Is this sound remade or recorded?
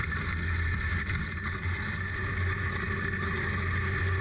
recorded